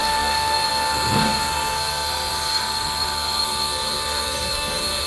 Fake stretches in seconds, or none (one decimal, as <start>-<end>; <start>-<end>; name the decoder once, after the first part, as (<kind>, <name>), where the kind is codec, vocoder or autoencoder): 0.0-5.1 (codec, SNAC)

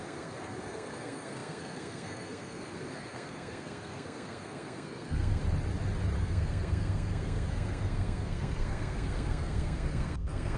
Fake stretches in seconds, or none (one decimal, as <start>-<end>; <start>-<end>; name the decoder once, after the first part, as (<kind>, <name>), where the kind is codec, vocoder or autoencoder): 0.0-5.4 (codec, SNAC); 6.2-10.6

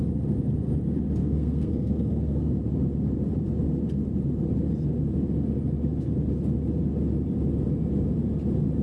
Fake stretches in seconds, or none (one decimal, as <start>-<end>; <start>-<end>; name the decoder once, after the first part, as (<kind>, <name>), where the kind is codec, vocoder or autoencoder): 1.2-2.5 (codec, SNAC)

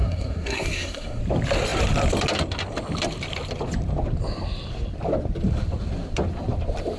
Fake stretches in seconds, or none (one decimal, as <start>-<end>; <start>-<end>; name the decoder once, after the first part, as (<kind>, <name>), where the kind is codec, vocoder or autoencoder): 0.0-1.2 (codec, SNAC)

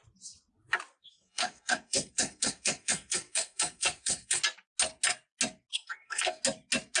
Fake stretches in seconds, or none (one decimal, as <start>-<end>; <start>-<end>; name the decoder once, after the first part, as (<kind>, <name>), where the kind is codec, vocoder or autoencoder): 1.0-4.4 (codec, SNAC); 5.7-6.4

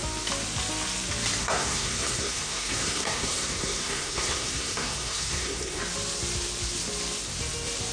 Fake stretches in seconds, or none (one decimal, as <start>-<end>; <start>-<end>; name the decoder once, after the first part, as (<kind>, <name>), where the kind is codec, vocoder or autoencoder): 1.4-5.8 (codec, SNAC)